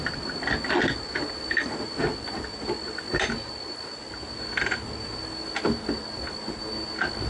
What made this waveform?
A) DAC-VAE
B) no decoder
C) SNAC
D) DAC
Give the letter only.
B